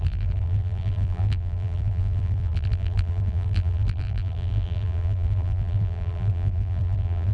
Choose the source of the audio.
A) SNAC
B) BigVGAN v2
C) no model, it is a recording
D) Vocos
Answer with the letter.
B